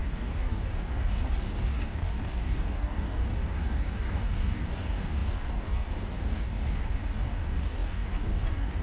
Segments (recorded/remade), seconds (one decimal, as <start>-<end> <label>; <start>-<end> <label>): 0.0-8.8 remade